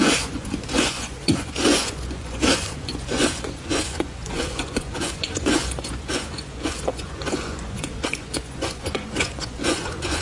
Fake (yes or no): yes